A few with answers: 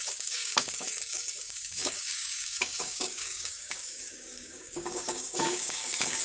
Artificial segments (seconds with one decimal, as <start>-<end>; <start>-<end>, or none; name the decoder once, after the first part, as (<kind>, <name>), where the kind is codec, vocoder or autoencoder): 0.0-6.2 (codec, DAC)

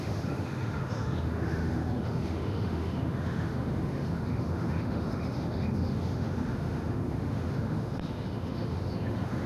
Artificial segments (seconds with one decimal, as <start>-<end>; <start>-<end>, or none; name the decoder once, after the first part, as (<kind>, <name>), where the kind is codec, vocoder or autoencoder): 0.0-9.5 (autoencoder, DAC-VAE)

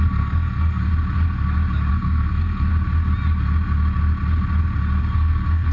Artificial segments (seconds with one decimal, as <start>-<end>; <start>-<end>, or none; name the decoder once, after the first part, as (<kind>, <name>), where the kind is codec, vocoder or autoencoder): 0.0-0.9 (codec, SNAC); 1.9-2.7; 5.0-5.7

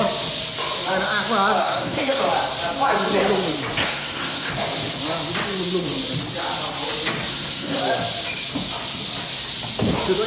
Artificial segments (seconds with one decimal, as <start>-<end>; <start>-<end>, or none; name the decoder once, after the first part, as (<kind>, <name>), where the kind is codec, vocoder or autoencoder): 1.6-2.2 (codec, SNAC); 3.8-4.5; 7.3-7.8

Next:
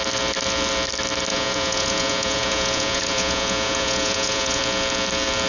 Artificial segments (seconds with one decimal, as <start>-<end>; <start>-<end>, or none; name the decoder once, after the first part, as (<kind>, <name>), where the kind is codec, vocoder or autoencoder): 1.3-4.6 (vocoder, Vocos)

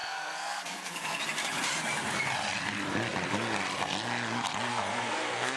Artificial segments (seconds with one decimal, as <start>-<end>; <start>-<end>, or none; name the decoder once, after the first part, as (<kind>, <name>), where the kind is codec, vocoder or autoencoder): 0.0-1.2 (codec, SNAC); 4.7-5.6